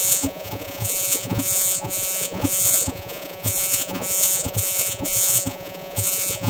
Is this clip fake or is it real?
fake